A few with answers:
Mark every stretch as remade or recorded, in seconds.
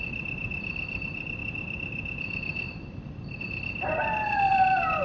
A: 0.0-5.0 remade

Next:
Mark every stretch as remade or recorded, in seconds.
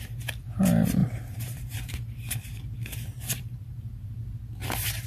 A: 0.0-1.0 recorded; 1.0-4.1 remade; 4.1-5.1 recorded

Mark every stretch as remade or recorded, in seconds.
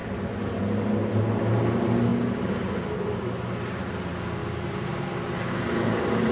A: 0.0-0.6 remade; 0.6-4.4 recorded; 4.4-5.1 remade; 5.1-6.3 recorded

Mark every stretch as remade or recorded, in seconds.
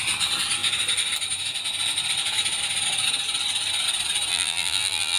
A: 0.0-4.3 recorded; 4.3-5.2 remade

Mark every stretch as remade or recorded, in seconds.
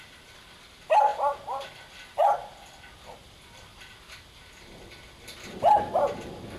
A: 0.0-1.1 remade; 1.1-3.1 recorded; 3.1-3.7 remade; 3.7-5.8 recorded; 5.8-6.6 remade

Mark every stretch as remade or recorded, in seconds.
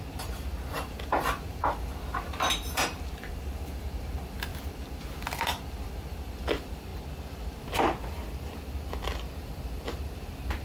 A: 0.0-6.9 remade; 6.9-7.6 recorded; 7.6-10.6 remade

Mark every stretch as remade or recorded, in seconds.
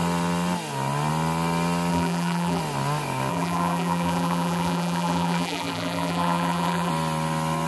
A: 0.0-1.9 recorded; 1.9-2.6 remade; 2.6-3.3 recorded; 3.3-6.9 remade; 6.9-7.7 recorded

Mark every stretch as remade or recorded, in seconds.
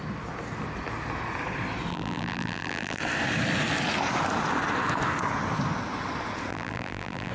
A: 0.0-1.9 recorded; 1.9-3.0 remade; 3.0-6.5 recorded; 6.5-7.3 remade